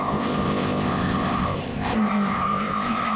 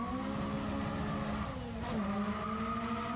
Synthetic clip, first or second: first